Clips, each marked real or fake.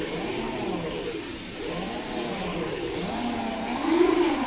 real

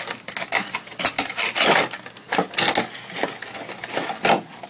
real